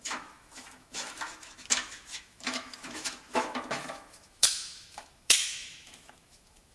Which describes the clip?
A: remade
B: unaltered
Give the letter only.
A